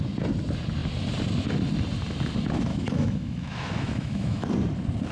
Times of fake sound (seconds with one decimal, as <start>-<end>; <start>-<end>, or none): 2.7-4.5